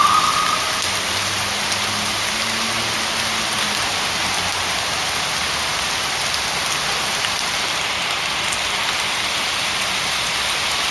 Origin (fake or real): real